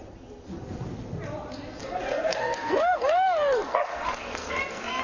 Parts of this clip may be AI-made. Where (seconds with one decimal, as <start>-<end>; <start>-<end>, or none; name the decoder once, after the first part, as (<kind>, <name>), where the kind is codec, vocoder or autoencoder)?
1.8-5.0 (codec, SNAC)